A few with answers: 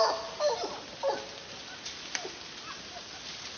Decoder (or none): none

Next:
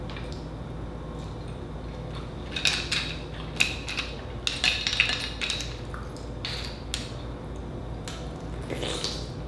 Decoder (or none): none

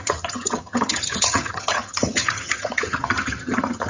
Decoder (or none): vocoder, HiFi-GAN